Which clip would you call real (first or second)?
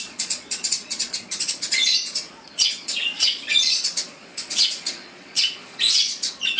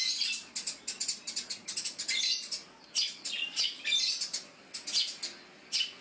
second